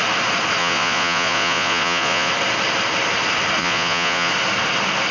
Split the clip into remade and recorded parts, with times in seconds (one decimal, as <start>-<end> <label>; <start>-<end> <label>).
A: 0.0-0.6 recorded; 0.6-2.3 remade; 2.3-3.6 recorded; 3.6-4.3 remade; 4.3-5.1 recorded